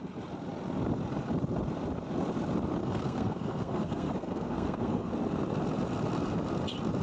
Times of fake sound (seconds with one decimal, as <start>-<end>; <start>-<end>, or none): 2.8-5.1